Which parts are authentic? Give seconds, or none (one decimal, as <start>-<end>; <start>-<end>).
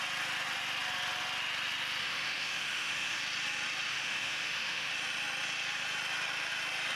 0.0-2.0; 3.2-3.9; 4.9-7.0